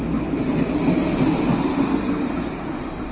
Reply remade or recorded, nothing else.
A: recorded